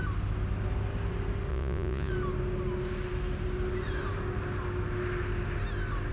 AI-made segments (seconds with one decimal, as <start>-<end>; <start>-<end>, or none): 1.5-2.1